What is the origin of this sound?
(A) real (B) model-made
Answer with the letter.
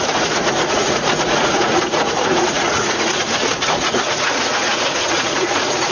B